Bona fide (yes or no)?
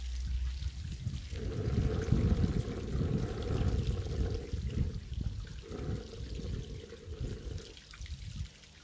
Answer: yes